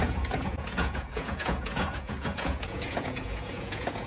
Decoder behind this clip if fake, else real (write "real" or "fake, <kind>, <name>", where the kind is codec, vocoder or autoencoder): fake, vocoder, Vocos